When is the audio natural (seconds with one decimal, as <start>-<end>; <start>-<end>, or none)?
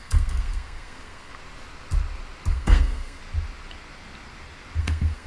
1.3-2.5; 3.2-4.8